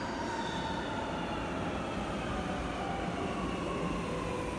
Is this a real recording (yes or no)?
yes